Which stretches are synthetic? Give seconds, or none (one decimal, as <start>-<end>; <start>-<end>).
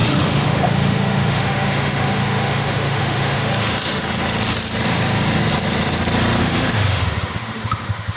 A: 0.0-4.0; 6.4-8.2